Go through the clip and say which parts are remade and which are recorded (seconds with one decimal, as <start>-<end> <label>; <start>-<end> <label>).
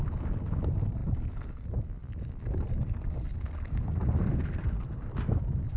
0.0-5.8 recorded